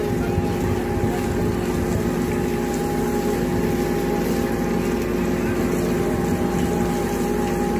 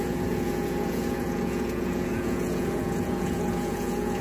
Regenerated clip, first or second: second